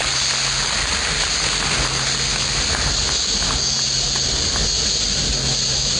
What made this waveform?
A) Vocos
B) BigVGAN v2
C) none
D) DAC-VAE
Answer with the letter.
C